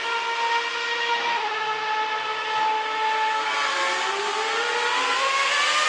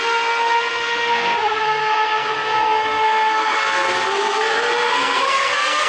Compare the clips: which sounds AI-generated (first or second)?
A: second